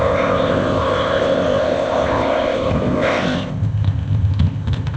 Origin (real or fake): fake